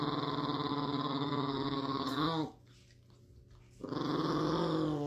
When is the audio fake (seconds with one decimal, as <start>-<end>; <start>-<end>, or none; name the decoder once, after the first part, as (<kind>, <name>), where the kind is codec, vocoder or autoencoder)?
0.7-2.2 (codec, SNAC)

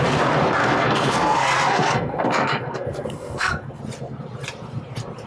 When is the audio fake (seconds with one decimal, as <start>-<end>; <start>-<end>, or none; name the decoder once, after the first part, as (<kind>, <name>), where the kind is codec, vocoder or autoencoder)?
0.6-3.8 (codec, SNAC)

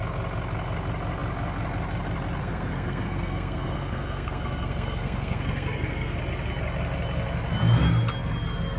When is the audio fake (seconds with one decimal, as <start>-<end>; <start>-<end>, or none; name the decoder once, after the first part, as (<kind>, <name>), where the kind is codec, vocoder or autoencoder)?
2.4-6.2 (codec, SNAC)

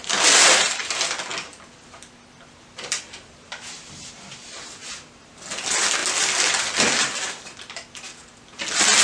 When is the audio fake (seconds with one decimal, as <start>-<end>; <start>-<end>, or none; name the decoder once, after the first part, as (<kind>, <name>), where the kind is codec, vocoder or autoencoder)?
none

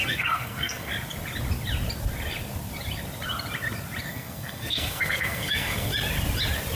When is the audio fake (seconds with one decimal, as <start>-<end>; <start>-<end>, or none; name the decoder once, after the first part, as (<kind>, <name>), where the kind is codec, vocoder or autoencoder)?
0.0-0.9 (codec, SNAC); 4.0-5.9

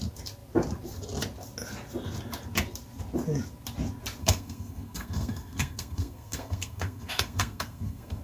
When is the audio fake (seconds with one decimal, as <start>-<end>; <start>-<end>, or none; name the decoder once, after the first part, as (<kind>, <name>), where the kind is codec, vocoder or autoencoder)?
4.2-8.2 (codec, SNAC)

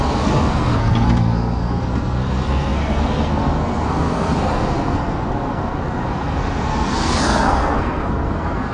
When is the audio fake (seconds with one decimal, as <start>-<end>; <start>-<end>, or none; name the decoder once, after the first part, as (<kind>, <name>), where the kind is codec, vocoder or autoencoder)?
0.0-8.7 (codec, SNAC)

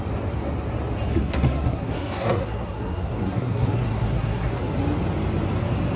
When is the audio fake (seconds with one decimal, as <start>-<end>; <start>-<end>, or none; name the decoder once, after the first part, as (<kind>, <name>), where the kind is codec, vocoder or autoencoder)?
1.1-4.7 (codec, SNAC)